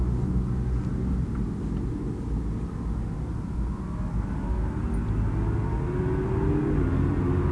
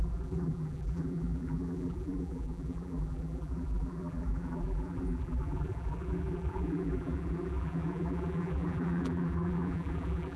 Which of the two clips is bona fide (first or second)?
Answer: first